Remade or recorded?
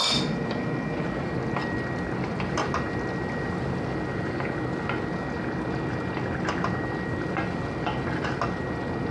recorded